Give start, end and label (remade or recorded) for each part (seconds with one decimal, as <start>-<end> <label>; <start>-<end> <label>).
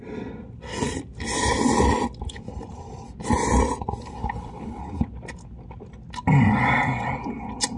0.0-4.2 recorded; 4.2-4.8 remade; 4.8-7.8 recorded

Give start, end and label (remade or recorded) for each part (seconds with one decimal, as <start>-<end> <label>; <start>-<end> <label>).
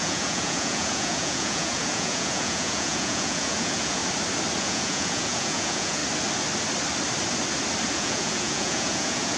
0.0-4.0 remade; 4.0-4.6 recorded; 4.6-6.0 remade; 6.0-7.9 recorded; 7.9-9.4 remade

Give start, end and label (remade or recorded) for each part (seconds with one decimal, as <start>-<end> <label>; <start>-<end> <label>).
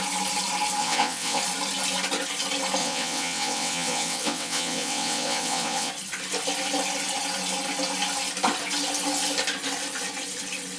0.0-0.8 recorded; 0.8-1.4 remade; 1.4-2.8 recorded; 2.8-5.9 remade; 5.9-10.8 recorded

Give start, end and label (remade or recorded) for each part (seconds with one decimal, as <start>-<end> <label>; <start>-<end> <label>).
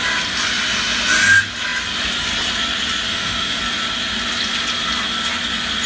0.0-3.1 recorded; 3.1-3.6 remade; 3.6-5.9 recorded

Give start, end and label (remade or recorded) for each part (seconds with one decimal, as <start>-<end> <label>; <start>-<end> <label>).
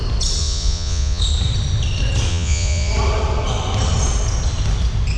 0.0-0.4 recorded; 0.4-1.2 remade; 1.2-2.3 recorded; 2.3-2.9 remade; 2.9-5.2 recorded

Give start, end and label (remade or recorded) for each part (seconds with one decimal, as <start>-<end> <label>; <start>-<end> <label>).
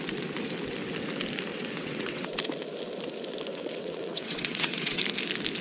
0.0-1.5 recorded; 1.5-2.3 remade; 2.3-3.5 recorded; 3.5-5.0 remade; 5.0-5.6 recorded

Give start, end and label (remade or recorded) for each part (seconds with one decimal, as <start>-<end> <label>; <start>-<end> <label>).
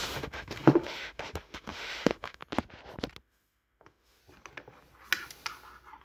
0.0-2.4 remade; 2.4-3.2 recorded; 3.2-4.2 remade; 4.2-6.0 recorded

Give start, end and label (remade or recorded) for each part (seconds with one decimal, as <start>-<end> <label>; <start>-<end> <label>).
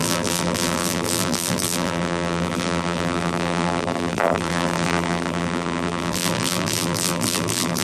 0.0-7.8 remade